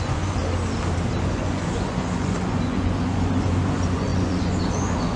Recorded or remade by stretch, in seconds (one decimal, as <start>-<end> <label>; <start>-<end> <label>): 0.0-0.4 remade; 0.4-1.2 recorded; 1.2-5.2 remade